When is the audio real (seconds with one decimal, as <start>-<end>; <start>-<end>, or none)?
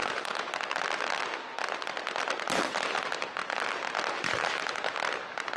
0.0-2.2